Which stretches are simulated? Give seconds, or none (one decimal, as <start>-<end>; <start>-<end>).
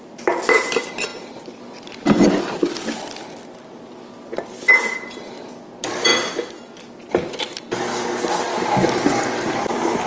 1.1-1.6; 4.7-5.5